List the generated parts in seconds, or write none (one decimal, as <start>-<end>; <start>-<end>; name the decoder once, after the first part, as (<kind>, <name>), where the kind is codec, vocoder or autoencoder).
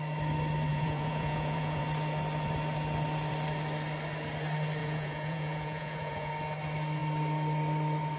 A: 0.7-1.8 (vocoder, Vocos); 4.8-6.3